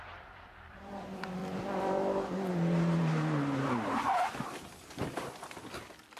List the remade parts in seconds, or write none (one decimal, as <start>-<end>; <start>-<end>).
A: 0.0-6.2